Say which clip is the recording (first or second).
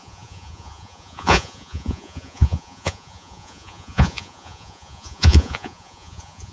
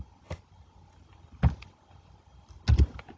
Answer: second